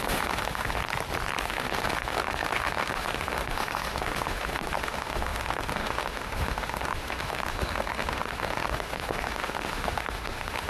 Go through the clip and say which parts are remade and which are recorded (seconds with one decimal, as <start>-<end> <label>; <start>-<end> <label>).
0.0-0.8 remade; 0.8-1.4 recorded; 1.4-10.7 remade